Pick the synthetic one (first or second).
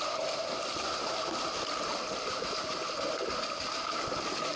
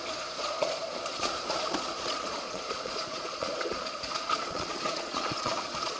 second